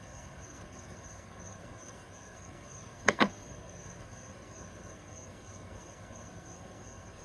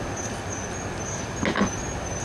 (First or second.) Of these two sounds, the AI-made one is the first